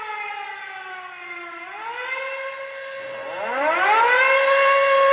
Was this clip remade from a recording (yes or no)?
no